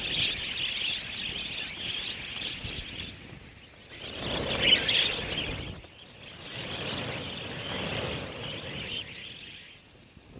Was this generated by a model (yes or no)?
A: no